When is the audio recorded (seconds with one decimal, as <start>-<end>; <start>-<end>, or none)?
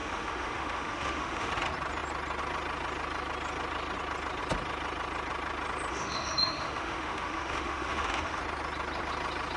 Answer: 1.5-5.9; 8.4-9.6